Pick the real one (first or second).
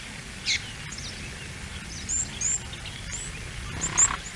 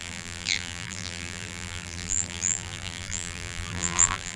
first